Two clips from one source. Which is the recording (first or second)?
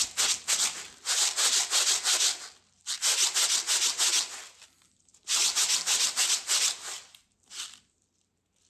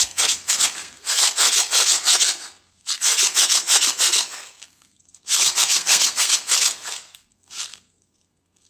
first